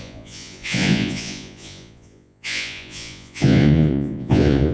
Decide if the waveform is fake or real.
fake